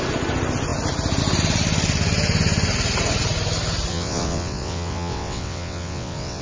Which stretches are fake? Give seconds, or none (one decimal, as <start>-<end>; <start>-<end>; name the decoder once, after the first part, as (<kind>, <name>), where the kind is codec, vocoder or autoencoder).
3.9-6.4 (vocoder, WaveNeXt)